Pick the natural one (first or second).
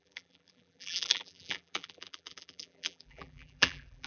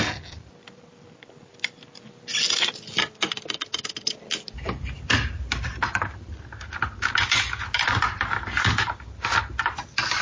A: second